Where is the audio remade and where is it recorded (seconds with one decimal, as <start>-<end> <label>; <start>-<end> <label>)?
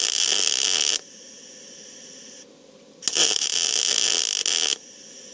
0.0-3.2 recorded; 3.2-3.8 remade; 3.8-5.3 recorded